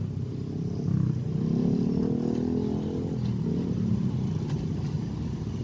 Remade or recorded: recorded